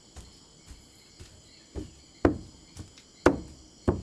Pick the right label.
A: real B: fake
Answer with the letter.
A